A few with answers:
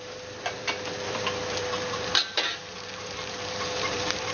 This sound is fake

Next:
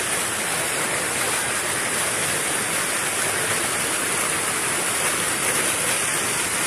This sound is real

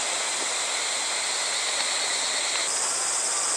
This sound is real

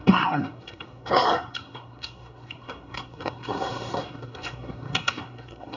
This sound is fake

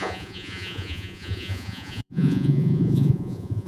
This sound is fake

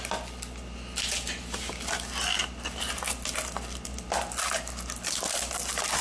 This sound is real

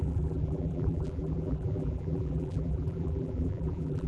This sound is fake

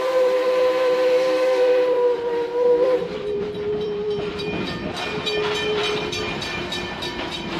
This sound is fake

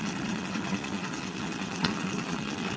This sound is fake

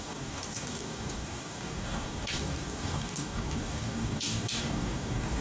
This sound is fake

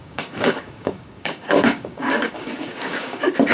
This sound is fake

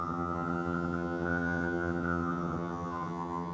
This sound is fake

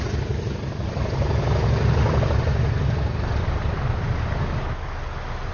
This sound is real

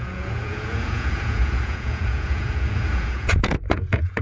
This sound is fake